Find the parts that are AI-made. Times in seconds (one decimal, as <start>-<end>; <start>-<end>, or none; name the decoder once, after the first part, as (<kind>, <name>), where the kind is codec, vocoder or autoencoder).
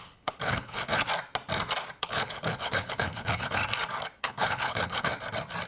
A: 0.0-0.9 (codec, HILCodec); 2.0-3.6; 4.2-5.1